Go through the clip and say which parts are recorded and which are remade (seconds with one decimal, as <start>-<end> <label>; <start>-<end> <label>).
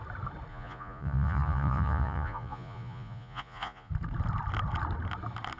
0.0-0.5 recorded; 0.5-3.9 remade; 3.9-5.6 recorded